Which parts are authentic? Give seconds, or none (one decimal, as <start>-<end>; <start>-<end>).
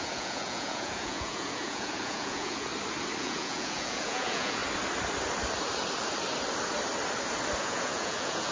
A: 2.7-3.2; 4.6-7.6